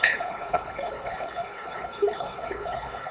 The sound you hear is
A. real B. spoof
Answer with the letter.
B